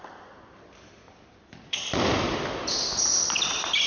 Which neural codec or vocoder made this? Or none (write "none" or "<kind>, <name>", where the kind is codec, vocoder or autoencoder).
vocoder, BigVGAN v2